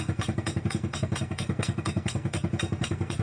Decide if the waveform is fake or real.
fake